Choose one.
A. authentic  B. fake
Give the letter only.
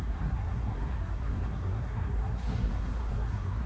B